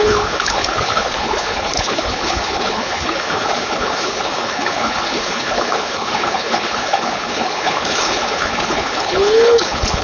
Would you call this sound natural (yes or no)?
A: no